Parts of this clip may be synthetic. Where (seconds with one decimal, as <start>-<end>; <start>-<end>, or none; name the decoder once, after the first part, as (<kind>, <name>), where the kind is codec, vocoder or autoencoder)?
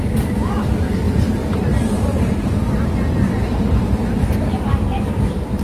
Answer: 1.4-4.8 (vocoder, BigVGAN v2)